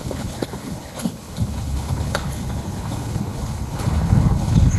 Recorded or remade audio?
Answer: remade